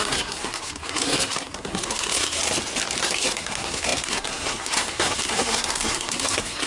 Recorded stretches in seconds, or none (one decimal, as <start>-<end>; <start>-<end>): 2.4-3.0